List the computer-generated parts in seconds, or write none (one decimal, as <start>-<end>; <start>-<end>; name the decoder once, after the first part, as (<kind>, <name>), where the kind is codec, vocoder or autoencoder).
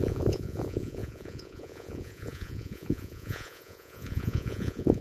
0.0-5.0 (vocoder, Vocos)